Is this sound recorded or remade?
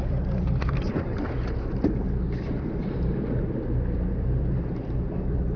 recorded